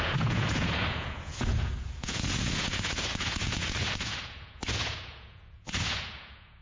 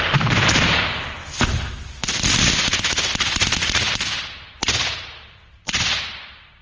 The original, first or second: second